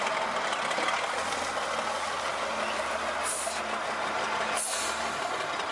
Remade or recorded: recorded